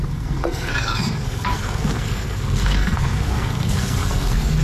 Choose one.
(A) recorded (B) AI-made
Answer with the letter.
B